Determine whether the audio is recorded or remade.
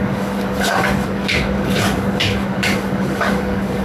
remade